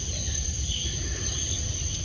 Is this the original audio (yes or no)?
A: yes